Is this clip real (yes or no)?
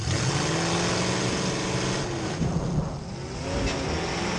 yes